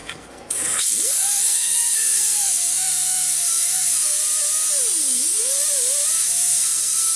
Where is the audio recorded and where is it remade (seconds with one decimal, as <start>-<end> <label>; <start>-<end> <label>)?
0.0-4.2 remade; 4.2-5.0 recorded; 5.0-5.5 remade; 5.5-6.2 recorded; 6.2-7.2 remade